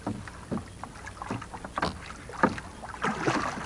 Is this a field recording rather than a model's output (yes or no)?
yes